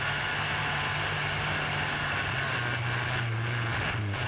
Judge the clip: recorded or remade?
recorded